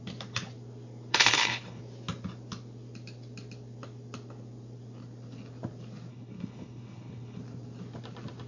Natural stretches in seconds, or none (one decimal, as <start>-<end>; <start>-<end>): 0.0-1.1; 1.8-6.1; 7.4-8.5